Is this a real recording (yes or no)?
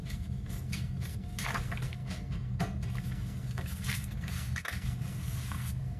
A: no